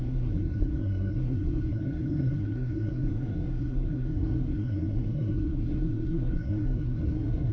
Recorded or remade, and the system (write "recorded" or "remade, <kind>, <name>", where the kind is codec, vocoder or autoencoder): remade, codec, SNAC